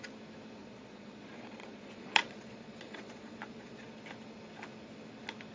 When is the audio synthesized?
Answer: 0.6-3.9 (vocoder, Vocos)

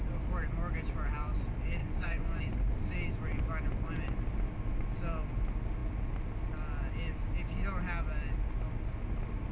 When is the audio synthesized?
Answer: 1.8-2.4 (vocoder, Vocos)

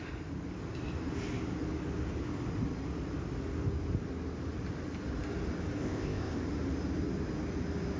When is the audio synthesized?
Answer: 5.8-6.4 (codec, ZipCodec)

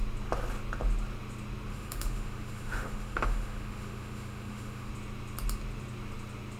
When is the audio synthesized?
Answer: 1.7-4.9 (autoencoder, DAC-VAE)

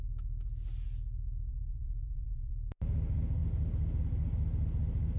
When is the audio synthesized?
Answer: 1.5-2.5 (vocoder, Vocos)

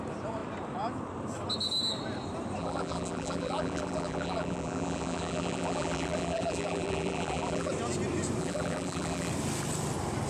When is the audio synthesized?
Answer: 2.6-7.7 (vocoder, BigVGAN v2); 8.4-9.3

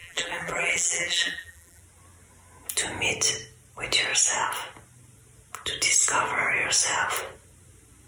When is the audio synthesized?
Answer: 0.0-1.8 (vocoder, BigVGAN v2)